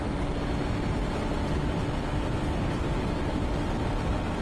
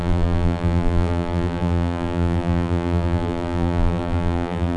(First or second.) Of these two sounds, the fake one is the second